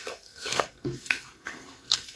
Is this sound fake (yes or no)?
yes